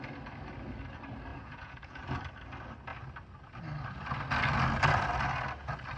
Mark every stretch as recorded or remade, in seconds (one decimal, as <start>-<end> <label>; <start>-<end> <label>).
0.0-1.3 recorded; 1.3-2.0 remade; 2.0-6.0 recorded